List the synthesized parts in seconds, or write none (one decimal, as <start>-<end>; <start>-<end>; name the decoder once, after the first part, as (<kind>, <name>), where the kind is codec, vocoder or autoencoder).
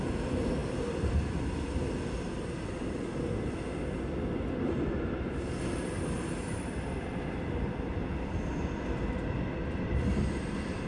none